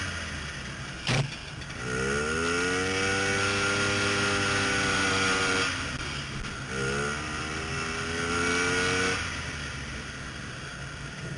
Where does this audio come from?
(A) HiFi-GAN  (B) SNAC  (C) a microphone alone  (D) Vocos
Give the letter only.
C